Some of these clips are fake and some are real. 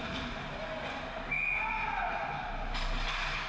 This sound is real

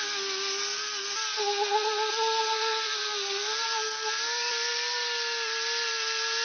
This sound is real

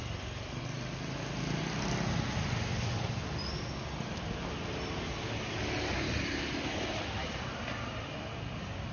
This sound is real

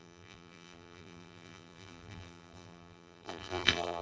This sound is fake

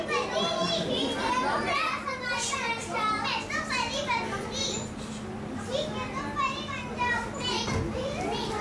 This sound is real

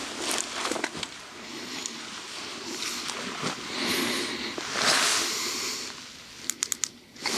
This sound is real